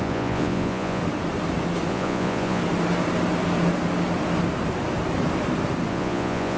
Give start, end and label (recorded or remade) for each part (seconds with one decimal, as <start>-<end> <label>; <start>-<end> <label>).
0.0-1.0 remade; 1.0-1.9 recorded; 1.9-2.6 remade; 2.6-5.9 recorded; 5.9-6.6 remade